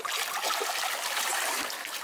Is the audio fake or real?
real